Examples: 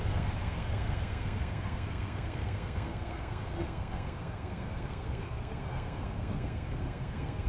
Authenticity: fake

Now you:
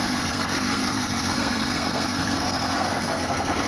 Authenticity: fake